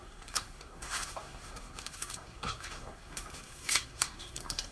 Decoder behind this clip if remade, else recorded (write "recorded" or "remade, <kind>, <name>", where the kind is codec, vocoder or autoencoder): remade, codec, SNAC